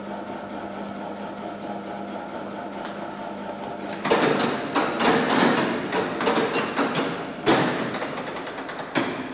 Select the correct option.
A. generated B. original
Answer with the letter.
B